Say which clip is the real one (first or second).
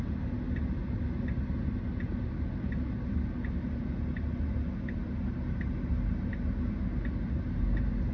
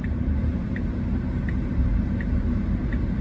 first